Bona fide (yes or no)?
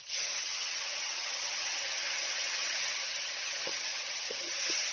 no